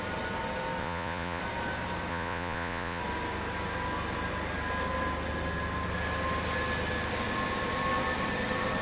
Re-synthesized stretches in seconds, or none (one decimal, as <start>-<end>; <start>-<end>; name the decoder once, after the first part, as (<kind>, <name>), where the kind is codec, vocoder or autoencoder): 0.8-1.4 (vocoder, Vocos); 2.1-3.0